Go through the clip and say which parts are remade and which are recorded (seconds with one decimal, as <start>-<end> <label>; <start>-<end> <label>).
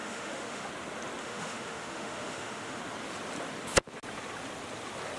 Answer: 0.0-0.7 remade; 0.7-1.2 recorded; 1.2-2.8 remade; 2.8-5.2 recorded